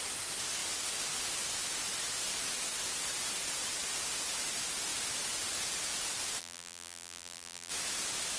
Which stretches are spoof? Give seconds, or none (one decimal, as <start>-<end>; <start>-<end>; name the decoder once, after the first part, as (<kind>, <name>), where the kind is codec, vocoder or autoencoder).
6.4-7.7 (vocoder, BigVGAN v2)